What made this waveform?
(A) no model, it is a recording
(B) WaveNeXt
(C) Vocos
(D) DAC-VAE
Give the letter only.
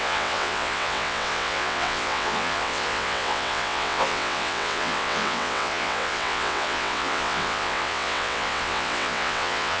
B